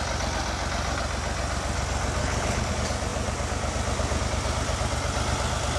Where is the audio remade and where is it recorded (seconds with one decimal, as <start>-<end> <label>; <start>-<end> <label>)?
0.0-2.2 recorded; 2.2-2.7 remade; 2.7-5.8 recorded